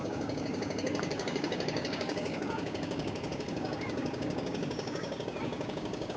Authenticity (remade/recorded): remade